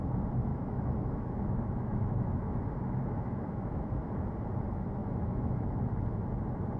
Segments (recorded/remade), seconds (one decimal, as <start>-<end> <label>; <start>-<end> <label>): 0.0-0.5 recorded; 0.5-4.1 remade; 4.1-5.0 recorded; 5.0-5.8 remade; 5.8-6.8 recorded